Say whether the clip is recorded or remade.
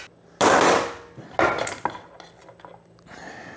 recorded